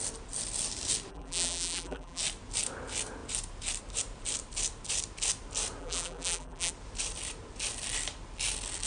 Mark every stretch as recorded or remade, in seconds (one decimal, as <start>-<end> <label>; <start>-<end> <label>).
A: 0.0-1.1 recorded; 1.1-2.2 remade; 2.2-5.8 recorded; 5.8-6.7 remade; 6.7-8.9 recorded